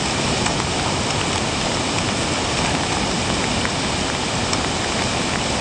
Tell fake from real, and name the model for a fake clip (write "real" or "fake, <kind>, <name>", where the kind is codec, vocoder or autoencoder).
real